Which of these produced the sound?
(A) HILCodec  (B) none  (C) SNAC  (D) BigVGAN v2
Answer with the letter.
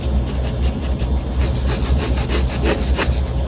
B